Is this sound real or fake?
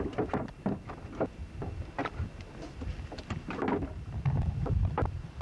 real